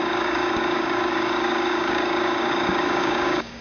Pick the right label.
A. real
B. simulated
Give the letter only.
B